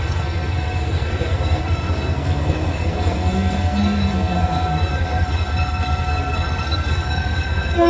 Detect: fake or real fake